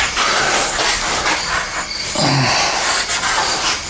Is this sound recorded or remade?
recorded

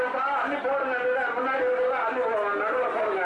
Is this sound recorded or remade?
recorded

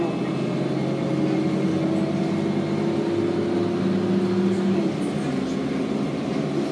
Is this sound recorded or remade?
recorded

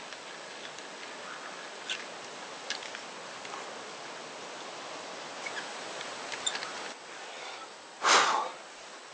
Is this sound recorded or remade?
recorded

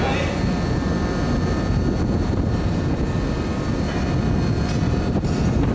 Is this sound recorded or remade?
recorded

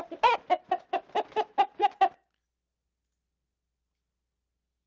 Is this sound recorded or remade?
recorded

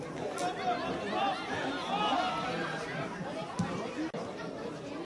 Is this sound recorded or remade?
recorded